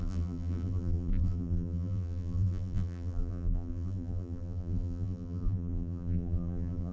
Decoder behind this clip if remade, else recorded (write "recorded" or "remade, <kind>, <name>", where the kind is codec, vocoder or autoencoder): remade, vocoder, BigVGAN v2